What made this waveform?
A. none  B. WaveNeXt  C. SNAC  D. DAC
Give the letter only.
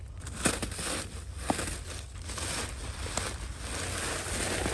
A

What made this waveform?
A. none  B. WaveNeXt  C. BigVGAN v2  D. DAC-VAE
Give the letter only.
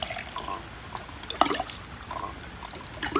A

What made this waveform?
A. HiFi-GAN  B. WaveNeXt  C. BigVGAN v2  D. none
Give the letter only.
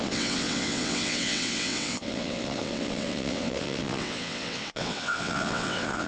B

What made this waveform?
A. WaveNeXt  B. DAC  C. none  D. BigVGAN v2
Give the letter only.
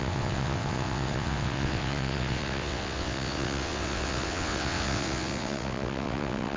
A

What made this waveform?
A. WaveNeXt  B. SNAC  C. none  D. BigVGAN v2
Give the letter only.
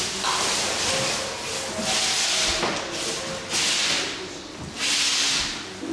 C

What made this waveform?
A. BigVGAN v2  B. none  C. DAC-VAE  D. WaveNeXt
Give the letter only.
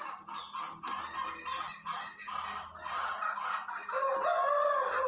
B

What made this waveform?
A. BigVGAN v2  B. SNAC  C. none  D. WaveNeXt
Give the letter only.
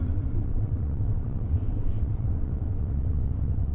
D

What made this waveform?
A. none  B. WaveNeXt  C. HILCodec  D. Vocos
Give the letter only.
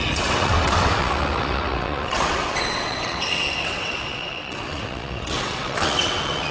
B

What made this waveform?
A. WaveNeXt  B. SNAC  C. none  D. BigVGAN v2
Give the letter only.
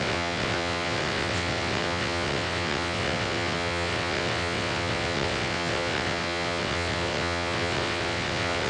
A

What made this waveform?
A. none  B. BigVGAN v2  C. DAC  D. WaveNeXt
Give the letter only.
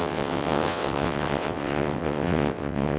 D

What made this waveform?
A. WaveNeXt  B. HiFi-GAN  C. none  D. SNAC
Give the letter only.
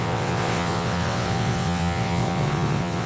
A